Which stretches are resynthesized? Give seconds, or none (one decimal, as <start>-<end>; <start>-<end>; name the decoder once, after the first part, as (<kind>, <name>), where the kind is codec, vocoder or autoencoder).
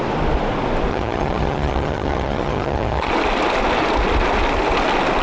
0.9-3.1 (vocoder, HiFi-GAN)